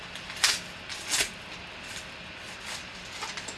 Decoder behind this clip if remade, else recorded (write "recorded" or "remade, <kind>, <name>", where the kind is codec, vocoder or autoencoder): recorded